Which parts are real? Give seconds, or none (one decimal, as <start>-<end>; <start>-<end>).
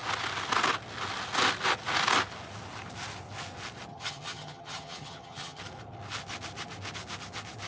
0.0-3.9; 5.6-7.7